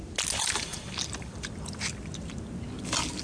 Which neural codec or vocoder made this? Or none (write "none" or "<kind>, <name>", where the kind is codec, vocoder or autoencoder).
none